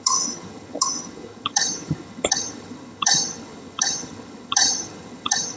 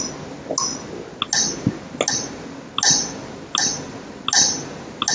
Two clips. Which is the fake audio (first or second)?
first